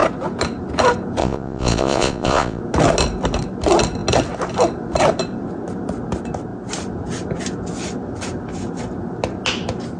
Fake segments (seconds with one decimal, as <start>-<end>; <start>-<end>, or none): 1.2-2.6